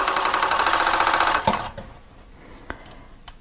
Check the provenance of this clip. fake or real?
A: real